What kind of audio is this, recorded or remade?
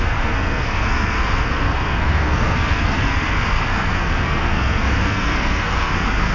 remade